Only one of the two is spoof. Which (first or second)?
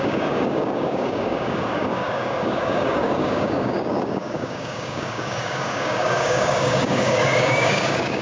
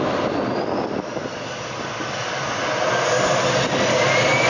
first